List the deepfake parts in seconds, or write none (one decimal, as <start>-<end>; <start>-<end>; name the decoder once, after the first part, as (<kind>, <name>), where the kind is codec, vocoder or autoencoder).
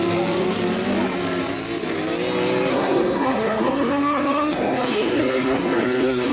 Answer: 2.7-6.3 (codec, SNAC)